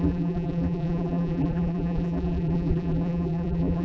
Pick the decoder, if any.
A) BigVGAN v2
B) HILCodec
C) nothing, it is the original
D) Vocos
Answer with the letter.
A